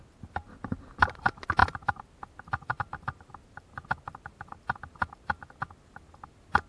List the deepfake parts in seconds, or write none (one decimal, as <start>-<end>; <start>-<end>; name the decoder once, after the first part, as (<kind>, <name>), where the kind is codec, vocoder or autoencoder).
none